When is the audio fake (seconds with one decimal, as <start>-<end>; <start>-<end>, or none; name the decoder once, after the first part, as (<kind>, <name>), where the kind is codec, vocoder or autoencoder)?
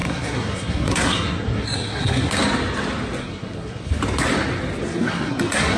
0.0-2.3 (codec, SNAC); 3.2-4.0; 4.9-5.8